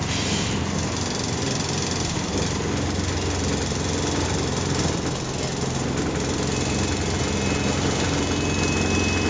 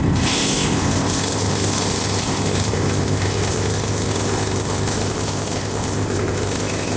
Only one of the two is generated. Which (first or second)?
second